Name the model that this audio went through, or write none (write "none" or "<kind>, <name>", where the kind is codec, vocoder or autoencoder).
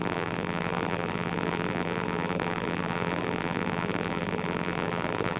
vocoder, BigVGAN v2